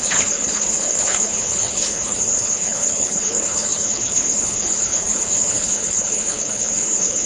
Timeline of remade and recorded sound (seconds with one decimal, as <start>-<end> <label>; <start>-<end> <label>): 0.0-7.3 remade